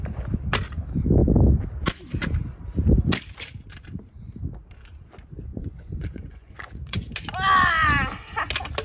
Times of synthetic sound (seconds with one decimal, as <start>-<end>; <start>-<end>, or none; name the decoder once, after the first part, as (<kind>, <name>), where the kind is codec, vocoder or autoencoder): 5.5-7.1 (vocoder, Vocos)